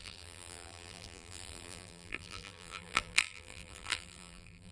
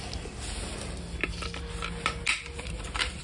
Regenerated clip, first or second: first